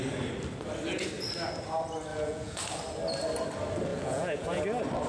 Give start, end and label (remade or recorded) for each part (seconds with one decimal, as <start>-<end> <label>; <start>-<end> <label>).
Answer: 0.0-2.1 recorded; 2.1-2.6 remade; 2.6-3.9 recorded; 3.9-4.6 remade; 4.6-5.1 recorded

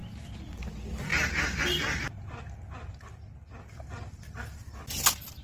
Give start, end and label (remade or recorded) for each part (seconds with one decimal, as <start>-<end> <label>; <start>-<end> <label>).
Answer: 0.0-5.4 recorded

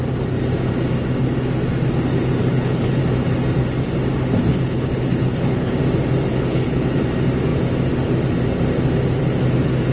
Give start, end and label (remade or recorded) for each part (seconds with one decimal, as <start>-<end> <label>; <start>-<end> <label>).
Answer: 0.0-2.4 recorded; 2.4-3.0 remade; 3.0-4.4 recorded; 4.4-5.7 remade; 5.7-6.3 recorded; 6.3-7.0 remade; 7.0-9.9 recorded

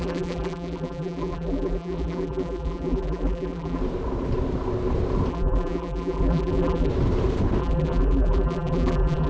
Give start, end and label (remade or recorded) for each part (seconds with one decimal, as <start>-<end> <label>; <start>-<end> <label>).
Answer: 0.0-3.8 remade; 3.8-5.3 recorded; 5.3-6.9 remade; 6.9-7.6 recorded; 7.6-9.3 remade

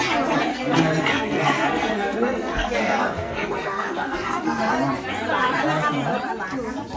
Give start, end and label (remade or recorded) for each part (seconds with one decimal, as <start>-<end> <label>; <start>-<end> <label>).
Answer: 0.0-0.5 recorded; 0.5-4.7 remade; 4.7-7.0 recorded

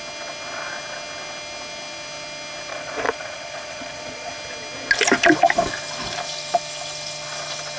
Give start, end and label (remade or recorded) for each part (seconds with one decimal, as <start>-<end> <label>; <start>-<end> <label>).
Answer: 0.0-2.7 recorded; 2.7-4.3 remade; 4.3-7.8 recorded

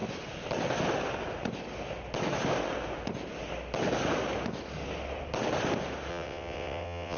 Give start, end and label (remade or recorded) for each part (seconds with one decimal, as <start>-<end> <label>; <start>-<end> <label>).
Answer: 0.0-6.1 recorded; 6.1-7.2 remade